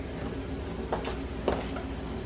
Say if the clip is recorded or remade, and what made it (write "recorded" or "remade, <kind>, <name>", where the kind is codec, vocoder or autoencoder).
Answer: recorded